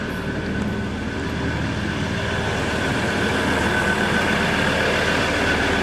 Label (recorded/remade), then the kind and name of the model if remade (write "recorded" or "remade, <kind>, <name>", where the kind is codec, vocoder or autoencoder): recorded